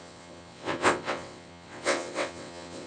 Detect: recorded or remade remade